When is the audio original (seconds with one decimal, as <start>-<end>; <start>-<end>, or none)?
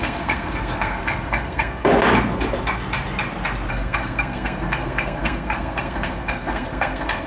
1.9-3.7